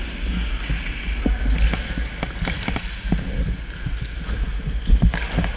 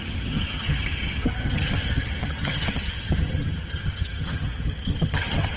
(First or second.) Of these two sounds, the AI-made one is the second